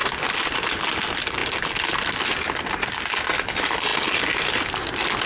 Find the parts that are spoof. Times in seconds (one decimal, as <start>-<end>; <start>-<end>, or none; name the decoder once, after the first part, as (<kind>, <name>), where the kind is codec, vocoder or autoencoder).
0.0-0.6 (vocoder, BigVGAN v2)